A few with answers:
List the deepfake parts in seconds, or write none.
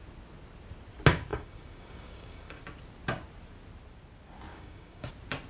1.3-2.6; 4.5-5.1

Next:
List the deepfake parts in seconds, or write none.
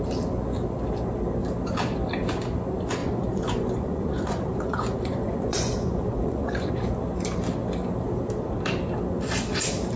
3.0-6.7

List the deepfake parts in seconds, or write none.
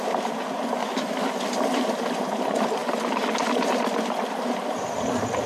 0.8-1.3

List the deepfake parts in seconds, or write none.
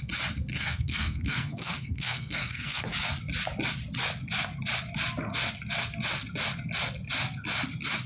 0.5-2.8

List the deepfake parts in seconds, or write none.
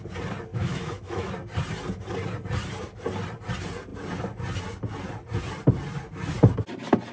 0.5-1.3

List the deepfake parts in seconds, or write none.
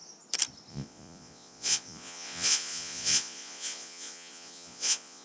0.7-5.2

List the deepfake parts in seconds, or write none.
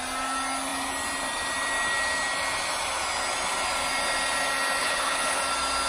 4.8-5.4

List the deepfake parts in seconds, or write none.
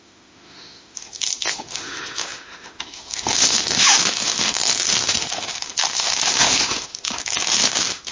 0.0-8.1